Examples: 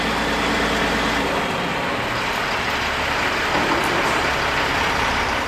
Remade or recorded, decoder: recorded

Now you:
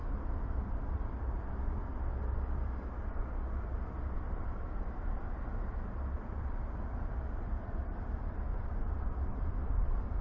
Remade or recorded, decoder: remade, vocoder, BigVGAN v2